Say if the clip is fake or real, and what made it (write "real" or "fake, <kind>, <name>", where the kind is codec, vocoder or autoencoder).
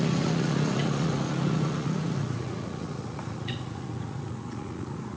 fake, vocoder, Vocos